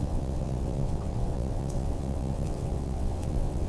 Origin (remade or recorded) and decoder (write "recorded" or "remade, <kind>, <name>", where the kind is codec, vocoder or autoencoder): remade, vocoder, WaveNeXt